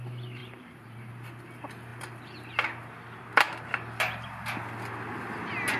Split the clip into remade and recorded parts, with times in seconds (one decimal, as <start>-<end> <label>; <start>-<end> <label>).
0.0-0.4 recorded; 0.4-1.1 remade; 1.1-5.8 recorded

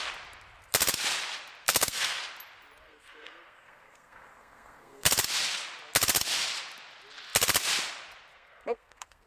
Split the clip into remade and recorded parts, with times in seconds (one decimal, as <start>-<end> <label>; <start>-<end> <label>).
0.0-1.6 recorded; 1.6-2.2 remade; 2.2-2.8 recorded; 2.8-5.1 remade; 5.1-8.3 recorded; 8.3-9.3 remade

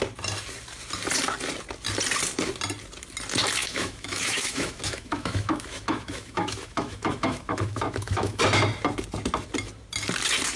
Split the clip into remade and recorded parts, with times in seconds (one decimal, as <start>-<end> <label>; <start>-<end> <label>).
0.0-3.6 recorded; 3.6-8.4 remade; 8.4-10.6 recorded

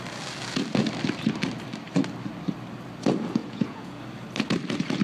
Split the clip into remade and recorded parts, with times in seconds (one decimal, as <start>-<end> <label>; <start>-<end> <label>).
0.0-3.4 recorded; 3.4-4.0 remade; 4.0-5.0 recorded

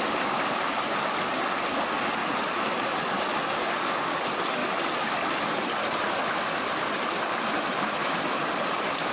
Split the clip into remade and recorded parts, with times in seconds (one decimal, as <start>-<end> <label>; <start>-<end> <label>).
0.0-9.1 recorded

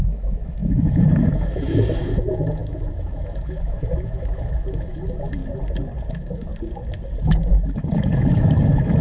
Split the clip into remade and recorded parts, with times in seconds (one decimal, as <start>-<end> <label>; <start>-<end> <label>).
0.0-5.4 remade; 5.4-6.1 recorded; 6.1-6.5 remade; 6.5-7.2 recorded; 7.2-9.0 remade

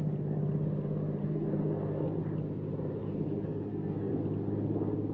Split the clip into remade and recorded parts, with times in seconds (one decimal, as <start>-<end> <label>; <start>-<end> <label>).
0.0-1.2 recorded; 1.2-2.2 remade; 2.2-3.0 recorded; 3.0-4.1 remade; 4.1-5.1 recorded

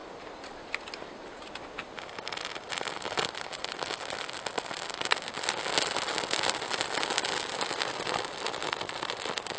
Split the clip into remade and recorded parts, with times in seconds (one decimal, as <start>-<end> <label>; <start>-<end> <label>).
0.0-9.6 recorded